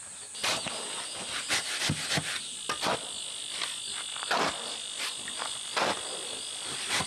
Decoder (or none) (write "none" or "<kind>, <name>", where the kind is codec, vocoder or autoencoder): none